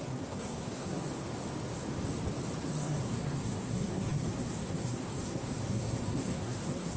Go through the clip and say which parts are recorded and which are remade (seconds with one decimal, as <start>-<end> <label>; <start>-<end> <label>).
0.0-1.0 remade; 1.0-2.6 recorded; 2.6-7.0 remade